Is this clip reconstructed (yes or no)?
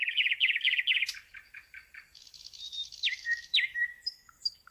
yes